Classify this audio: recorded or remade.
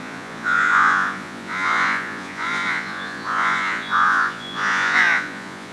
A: remade